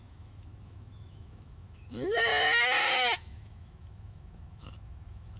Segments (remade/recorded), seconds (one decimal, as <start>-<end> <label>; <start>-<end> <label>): 0.0-2.3 remade; 2.3-2.9 recorded; 2.9-5.4 remade